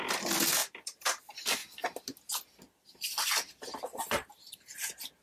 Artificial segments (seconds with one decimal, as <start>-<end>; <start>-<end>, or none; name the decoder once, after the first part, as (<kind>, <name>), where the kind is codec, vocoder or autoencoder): 0.6-1.2 (vocoder, BigVGAN v2); 3.9-4.8